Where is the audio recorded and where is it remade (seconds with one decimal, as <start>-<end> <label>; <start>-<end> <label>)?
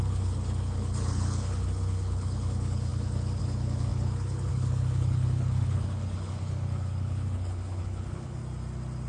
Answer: 0.0-8.4 remade; 8.4-9.1 recorded